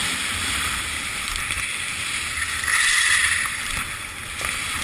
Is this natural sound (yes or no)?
no